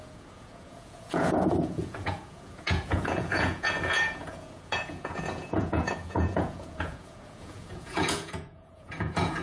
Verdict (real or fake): fake